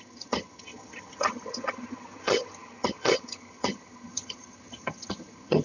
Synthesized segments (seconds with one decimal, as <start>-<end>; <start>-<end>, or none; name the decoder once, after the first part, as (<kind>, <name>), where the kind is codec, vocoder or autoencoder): 0.0-5.6 (vocoder, HiFi-GAN)